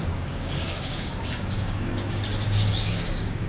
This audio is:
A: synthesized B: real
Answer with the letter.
A